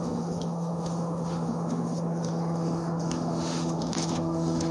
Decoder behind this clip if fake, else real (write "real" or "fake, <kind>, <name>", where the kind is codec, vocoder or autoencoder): fake, autoencoder, DAC-VAE